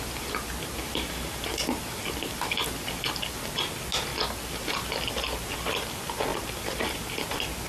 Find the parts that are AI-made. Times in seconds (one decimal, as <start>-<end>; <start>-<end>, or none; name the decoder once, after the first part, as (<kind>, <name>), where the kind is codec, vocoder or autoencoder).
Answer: none